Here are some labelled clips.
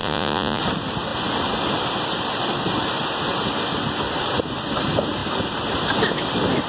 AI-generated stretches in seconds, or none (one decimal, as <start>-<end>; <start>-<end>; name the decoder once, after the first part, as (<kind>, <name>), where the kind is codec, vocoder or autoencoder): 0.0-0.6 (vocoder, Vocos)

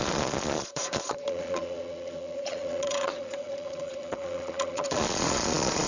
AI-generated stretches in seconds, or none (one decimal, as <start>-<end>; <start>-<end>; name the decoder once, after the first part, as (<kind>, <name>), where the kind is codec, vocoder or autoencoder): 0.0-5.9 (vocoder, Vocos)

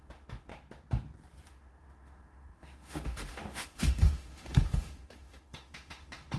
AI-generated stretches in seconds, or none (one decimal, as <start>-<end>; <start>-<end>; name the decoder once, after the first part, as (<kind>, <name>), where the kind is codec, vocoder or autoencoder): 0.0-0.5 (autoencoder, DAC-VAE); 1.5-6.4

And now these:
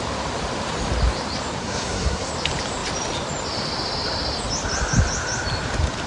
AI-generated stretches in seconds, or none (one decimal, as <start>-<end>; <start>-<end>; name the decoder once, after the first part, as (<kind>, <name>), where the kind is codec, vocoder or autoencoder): 1.6-2.3 (codec, SNAC)